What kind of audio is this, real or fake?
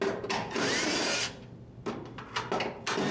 real